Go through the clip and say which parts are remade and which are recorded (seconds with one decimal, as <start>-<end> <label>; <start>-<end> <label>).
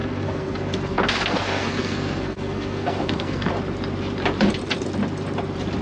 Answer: 0.0-3.5 remade; 3.5-5.8 recorded